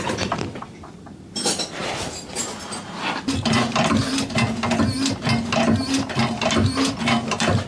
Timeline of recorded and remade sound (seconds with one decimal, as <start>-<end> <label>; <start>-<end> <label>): 0.0-7.7 recorded